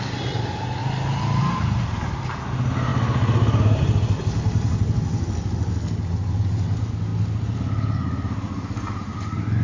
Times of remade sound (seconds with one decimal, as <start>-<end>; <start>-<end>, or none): none